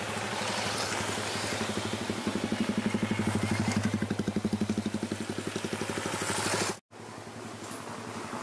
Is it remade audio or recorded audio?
recorded